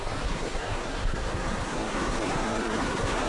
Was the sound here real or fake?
fake